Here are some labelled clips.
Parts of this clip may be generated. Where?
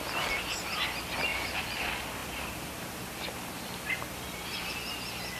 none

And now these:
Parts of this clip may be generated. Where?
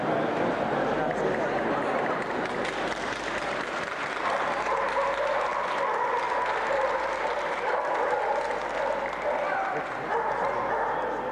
none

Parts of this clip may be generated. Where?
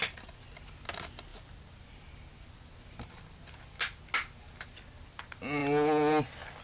none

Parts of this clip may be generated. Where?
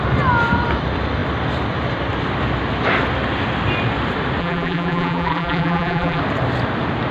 4.4-6.2